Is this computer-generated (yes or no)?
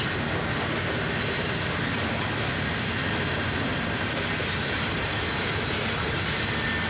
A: no